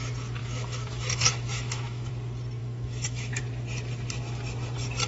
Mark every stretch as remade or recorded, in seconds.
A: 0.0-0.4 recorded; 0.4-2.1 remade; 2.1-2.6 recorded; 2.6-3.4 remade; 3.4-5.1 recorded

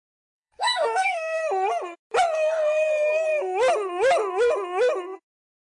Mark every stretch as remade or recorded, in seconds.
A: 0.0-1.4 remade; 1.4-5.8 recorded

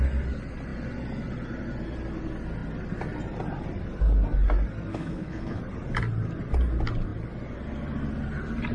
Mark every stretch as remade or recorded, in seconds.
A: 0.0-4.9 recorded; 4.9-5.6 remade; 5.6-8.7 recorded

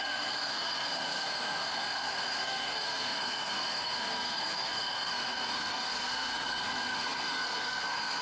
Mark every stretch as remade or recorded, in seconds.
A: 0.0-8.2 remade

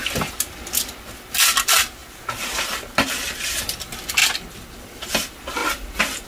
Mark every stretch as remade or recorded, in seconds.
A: 0.0-6.3 recorded

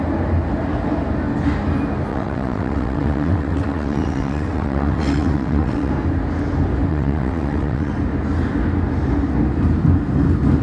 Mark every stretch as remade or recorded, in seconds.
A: 0.0-2.1 recorded; 2.1-5.9 remade; 5.9-6.9 recorded; 6.9-7.9 remade; 7.9-10.6 recorded

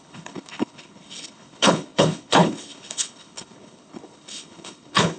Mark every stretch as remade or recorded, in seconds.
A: 0.0-5.2 remade